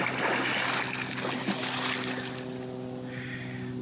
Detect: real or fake real